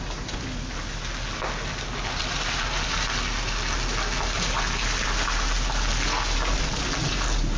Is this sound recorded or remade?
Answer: recorded